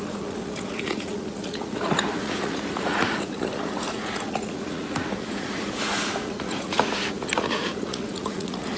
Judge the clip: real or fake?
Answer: fake